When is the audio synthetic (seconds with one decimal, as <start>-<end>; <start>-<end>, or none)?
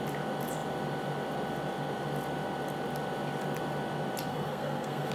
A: 4.3-5.1